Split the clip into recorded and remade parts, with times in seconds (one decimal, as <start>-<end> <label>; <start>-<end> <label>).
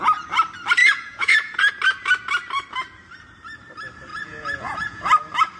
0.0-0.8 recorded; 0.8-1.7 remade; 1.7-4.1 recorded; 4.1-5.0 remade; 5.0-5.6 recorded